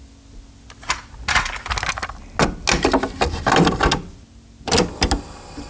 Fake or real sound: real